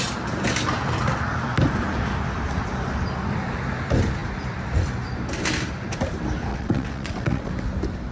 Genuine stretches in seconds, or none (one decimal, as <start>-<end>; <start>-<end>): 0.0-6.5; 7.5-8.1